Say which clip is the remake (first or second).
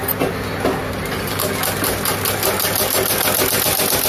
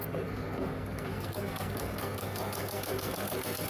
second